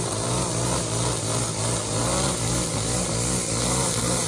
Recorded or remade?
recorded